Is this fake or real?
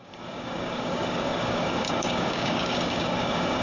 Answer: fake